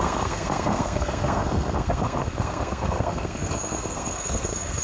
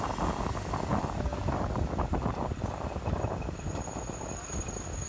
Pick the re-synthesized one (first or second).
first